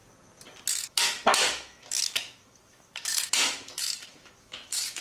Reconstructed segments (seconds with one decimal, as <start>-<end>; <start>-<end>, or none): 0.7-5.0